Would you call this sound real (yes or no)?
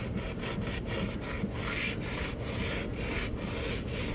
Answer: yes